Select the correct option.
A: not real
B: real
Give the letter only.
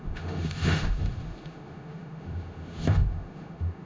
A